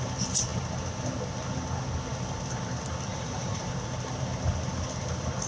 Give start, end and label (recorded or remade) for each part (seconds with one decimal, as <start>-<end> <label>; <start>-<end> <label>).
0.0-3.1 recorded; 3.1-3.6 remade; 3.6-5.5 recorded